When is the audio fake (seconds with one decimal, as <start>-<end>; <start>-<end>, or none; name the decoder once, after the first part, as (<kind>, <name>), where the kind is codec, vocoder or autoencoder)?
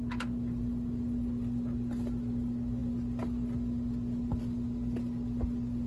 none